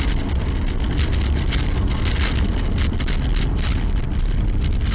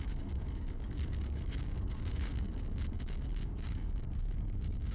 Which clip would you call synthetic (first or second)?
second